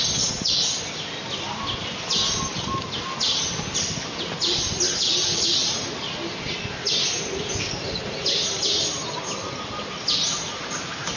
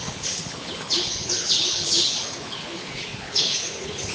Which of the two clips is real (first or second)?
first